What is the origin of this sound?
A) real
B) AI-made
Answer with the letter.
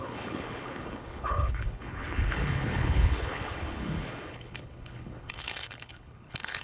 B